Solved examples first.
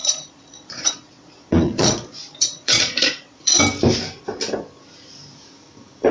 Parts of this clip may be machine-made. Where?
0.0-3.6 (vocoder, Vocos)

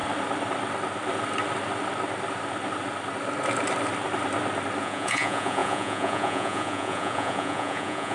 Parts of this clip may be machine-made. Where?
4.8-8.1 (vocoder, Vocos)

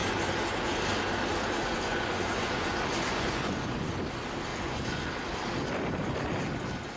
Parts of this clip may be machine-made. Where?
0.0-0.8 (vocoder, Vocos); 1.6-3.9; 4.5-5.1